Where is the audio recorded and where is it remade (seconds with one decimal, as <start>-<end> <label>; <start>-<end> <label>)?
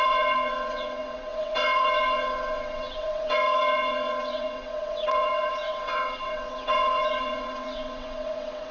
0.0-8.7 remade